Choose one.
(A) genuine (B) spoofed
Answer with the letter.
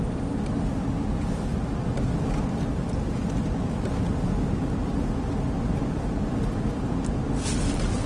A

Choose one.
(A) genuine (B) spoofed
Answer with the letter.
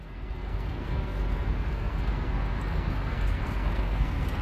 B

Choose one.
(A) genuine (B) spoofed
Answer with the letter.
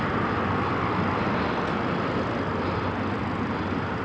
A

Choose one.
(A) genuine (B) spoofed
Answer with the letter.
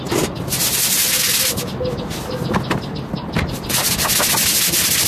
A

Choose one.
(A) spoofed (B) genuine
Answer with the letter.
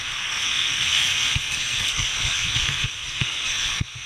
A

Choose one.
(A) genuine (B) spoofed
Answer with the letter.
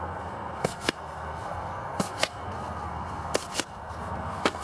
B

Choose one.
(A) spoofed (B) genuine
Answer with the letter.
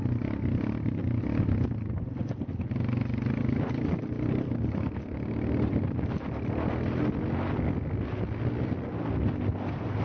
B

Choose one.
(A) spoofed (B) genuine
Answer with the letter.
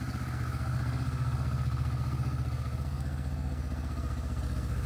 A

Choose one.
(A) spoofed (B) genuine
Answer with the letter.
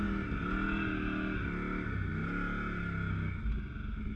B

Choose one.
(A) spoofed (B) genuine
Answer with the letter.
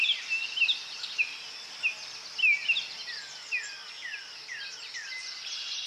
B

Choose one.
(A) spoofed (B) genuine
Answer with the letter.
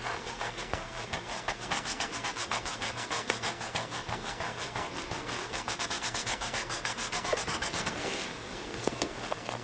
A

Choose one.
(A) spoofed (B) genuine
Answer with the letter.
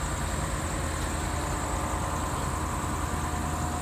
B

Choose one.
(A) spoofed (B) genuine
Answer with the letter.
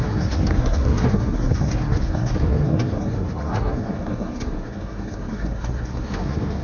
A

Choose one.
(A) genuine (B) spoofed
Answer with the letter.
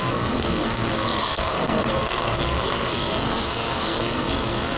B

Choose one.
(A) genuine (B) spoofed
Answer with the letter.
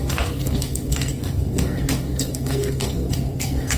B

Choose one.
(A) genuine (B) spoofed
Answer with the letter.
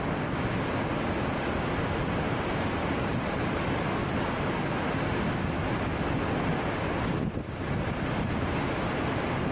A